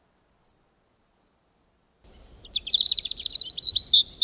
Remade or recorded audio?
recorded